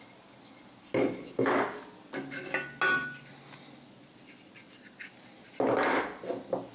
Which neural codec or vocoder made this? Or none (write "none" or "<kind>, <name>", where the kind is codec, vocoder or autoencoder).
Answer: none